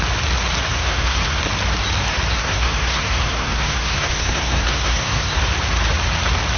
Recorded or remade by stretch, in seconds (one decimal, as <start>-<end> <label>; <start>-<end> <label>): 0.0-0.8 recorded; 0.8-1.4 remade; 1.4-2.4 recorded; 2.4-5.4 remade; 5.4-6.6 recorded